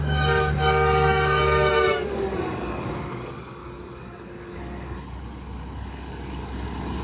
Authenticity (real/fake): fake